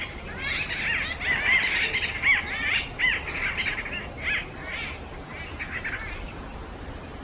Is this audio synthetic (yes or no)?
no